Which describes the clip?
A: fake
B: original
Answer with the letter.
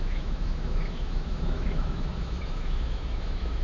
A